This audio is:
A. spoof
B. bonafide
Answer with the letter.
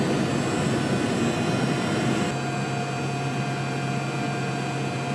B